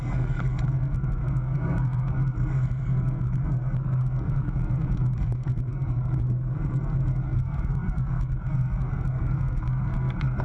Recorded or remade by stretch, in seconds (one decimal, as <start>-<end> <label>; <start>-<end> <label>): 0.0-10.4 remade